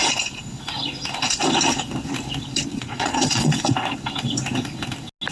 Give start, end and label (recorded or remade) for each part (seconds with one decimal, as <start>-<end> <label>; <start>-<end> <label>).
0.0-2.7 recorded; 2.7-3.6 remade; 3.6-5.3 recorded